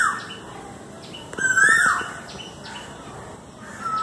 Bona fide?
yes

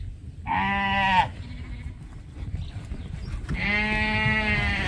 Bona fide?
yes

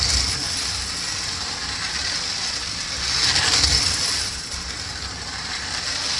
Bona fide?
yes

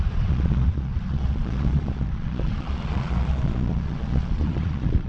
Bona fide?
no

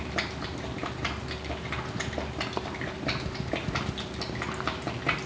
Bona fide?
yes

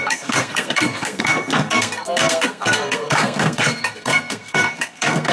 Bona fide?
no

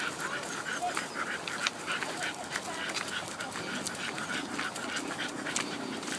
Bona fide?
yes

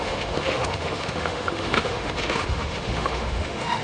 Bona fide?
no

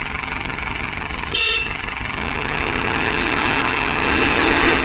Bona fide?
no